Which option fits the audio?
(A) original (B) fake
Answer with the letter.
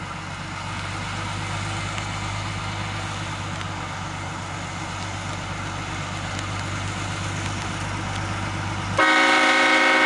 A